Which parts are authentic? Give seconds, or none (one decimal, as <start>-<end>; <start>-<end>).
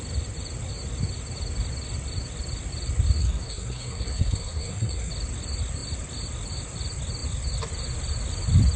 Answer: 0.0-3.2; 5.1-8.8